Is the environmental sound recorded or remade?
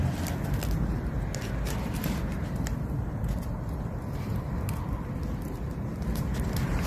recorded